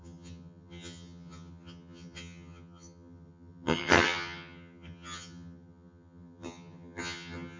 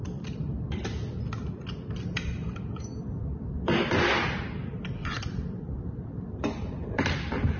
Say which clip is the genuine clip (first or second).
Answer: second